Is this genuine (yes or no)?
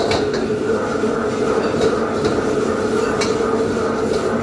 yes